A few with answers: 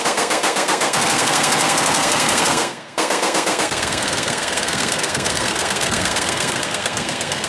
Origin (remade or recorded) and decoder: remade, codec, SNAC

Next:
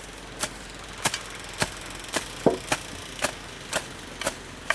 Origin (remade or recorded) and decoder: recorded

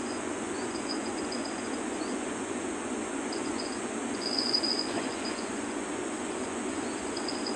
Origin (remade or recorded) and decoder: remade, vocoder, Vocos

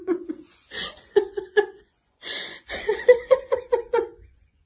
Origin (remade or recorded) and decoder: remade, vocoder, Vocos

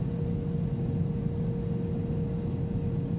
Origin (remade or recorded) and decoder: recorded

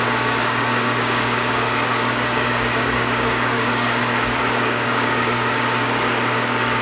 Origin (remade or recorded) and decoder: remade, codec, DAC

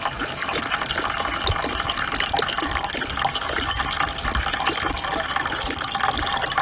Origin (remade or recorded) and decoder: recorded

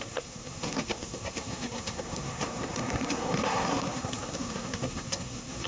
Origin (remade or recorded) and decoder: remade, codec, SNAC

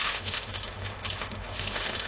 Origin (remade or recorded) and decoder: remade, autoencoder, DAC-VAE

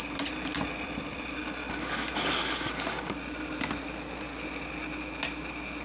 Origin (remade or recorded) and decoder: recorded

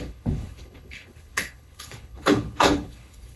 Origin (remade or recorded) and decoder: remade, codec, HILCodec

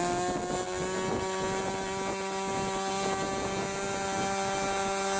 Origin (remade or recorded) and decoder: recorded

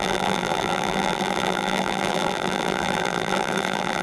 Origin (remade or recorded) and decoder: remade, vocoder, BigVGAN v2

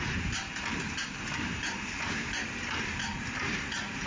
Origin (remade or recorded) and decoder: remade, vocoder, BigVGAN v2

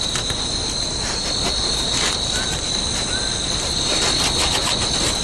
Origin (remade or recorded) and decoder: recorded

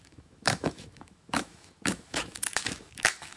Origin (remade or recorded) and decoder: remade, autoencoder, DAC-VAE